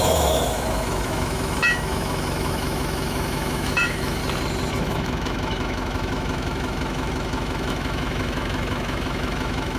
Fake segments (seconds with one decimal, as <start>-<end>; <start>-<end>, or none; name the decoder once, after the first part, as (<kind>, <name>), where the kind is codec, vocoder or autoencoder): 0.0-4.2 (autoencoder, DAC-VAE); 4.7-9.8